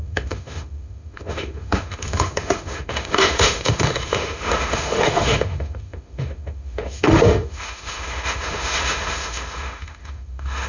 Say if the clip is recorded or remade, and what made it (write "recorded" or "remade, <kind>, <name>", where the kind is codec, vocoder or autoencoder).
remade, autoencoder, DAC-VAE